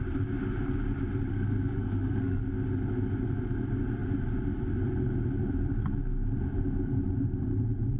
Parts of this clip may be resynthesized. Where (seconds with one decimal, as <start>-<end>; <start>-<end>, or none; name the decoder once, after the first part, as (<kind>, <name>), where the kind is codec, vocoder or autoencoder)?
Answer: 1.3-2.4 (codec, SNAC)